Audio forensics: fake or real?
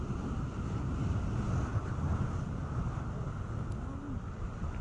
real